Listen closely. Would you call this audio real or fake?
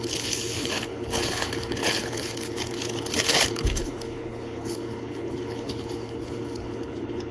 fake